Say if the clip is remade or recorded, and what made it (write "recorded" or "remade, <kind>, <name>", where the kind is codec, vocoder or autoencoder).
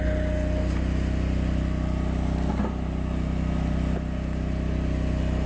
recorded